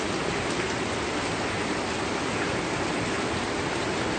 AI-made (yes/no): no